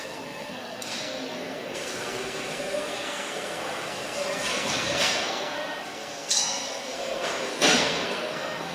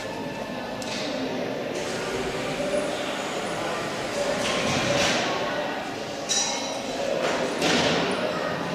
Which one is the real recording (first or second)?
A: second